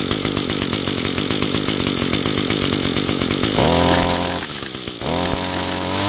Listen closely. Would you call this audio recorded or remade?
remade